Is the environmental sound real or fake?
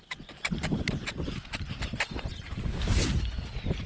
real